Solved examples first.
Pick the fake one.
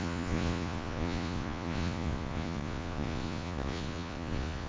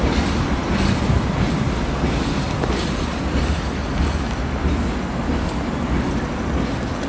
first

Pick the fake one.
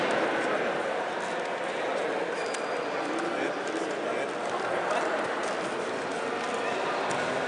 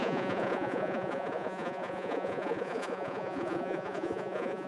second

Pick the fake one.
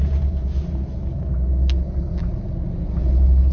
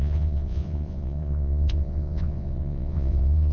second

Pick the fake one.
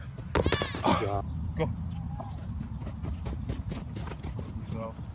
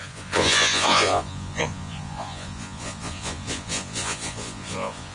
second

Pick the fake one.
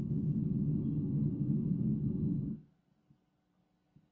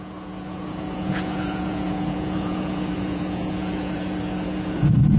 second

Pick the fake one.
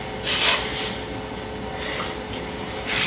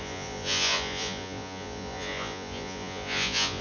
second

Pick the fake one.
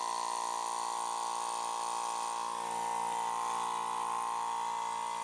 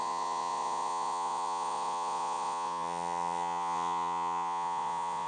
second